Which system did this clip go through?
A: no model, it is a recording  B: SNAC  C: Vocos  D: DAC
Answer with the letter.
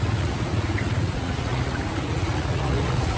C